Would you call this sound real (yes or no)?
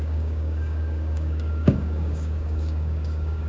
no